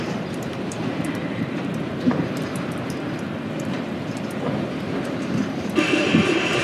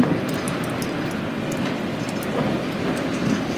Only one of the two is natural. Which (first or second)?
second